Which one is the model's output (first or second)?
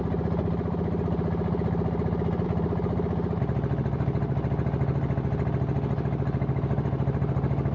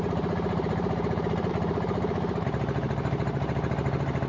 second